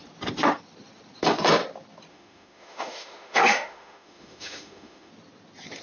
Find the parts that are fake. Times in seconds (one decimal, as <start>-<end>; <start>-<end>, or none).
2.1-5.1